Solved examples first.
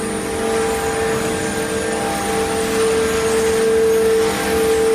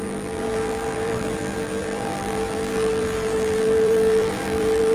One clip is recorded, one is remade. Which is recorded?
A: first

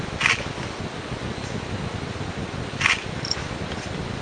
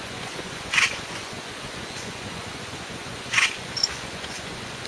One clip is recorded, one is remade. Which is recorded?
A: first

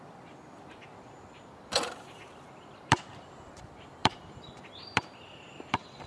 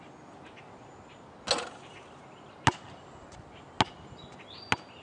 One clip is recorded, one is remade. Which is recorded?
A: second